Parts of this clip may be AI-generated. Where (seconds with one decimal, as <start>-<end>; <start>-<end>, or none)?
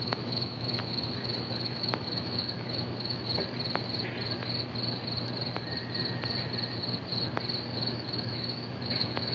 0.0-3.3; 7.7-9.3